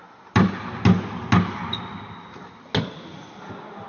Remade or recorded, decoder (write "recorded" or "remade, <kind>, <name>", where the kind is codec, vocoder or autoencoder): recorded